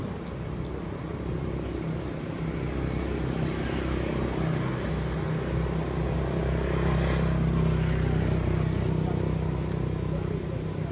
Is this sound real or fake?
real